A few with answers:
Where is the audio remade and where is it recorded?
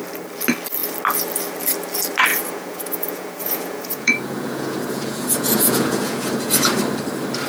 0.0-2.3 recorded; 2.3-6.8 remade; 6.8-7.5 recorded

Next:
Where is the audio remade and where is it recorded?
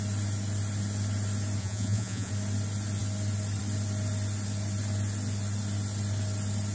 0.0-1.6 recorded; 1.6-2.3 remade; 2.3-6.7 recorded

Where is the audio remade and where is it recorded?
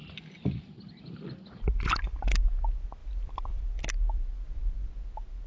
0.0-3.0 recorded; 3.0-3.6 remade; 3.6-5.5 recorded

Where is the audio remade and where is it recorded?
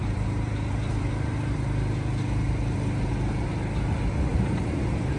0.0-3.1 remade; 3.1-4.3 recorded; 4.3-5.2 remade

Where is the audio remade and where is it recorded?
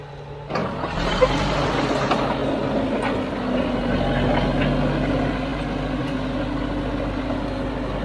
0.0-0.6 recorded; 0.6-1.6 remade; 1.6-8.0 recorded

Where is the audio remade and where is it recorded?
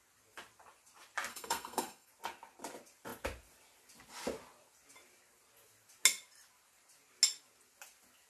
0.0-1.3 recorded; 1.3-2.1 remade; 2.1-8.3 recorded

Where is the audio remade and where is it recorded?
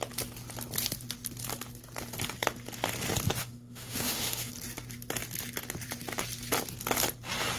0.0-3.4 recorded; 3.4-4.5 remade; 4.5-7.6 recorded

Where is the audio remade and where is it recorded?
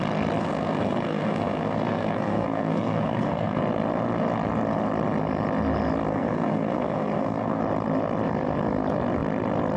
0.0-0.4 recorded; 0.4-3.6 remade; 3.6-6.1 recorded; 6.1-7.6 remade; 7.6-9.8 recorded